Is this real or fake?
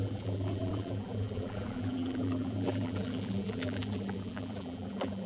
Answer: fake